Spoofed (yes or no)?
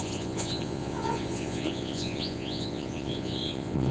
yes